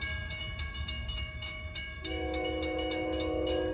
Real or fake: fake